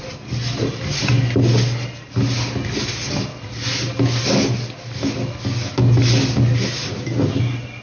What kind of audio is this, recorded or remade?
recorded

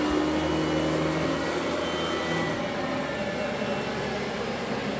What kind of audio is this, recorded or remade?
recorded